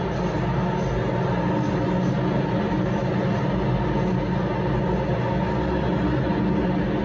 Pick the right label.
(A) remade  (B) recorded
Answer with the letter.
B